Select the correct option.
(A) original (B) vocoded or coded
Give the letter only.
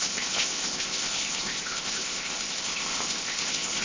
B